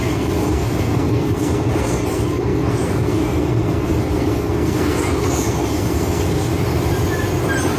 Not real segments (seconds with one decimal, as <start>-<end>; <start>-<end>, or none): 0.0-6.5